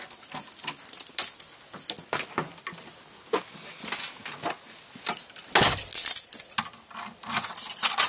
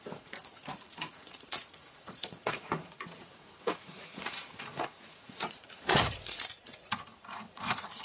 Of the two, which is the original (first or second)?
first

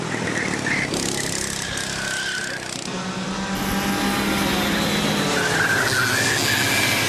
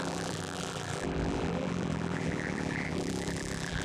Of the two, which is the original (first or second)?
first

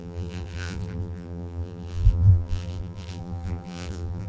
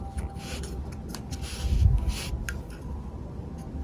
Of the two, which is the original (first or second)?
second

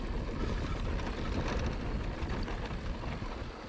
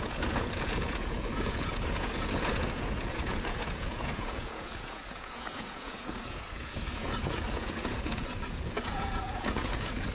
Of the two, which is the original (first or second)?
first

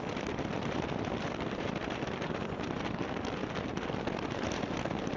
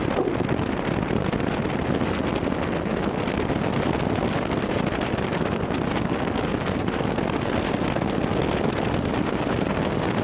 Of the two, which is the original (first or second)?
second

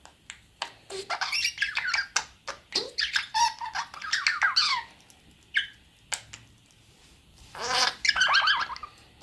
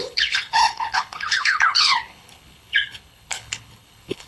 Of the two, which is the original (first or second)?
first